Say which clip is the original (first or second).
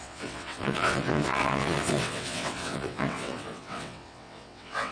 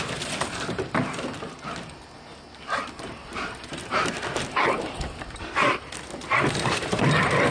second